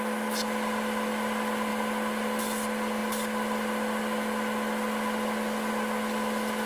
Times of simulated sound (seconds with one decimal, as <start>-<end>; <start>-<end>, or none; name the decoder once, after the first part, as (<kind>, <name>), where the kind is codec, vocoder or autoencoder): none